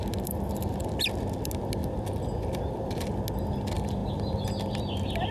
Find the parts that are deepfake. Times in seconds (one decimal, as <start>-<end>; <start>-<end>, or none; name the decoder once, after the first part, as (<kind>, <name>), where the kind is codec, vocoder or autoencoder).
none